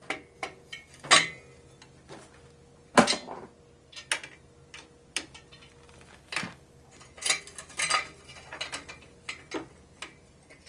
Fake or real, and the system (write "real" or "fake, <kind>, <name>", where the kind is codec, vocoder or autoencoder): real